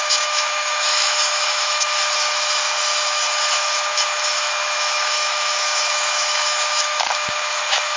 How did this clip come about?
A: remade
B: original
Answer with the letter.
A